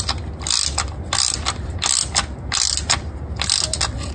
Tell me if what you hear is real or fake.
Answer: real